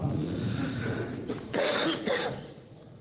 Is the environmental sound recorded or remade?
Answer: remade